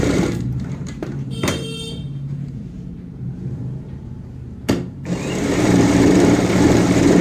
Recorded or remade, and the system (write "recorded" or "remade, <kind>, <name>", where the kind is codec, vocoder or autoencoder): remade, vocoder, BigVGAN v2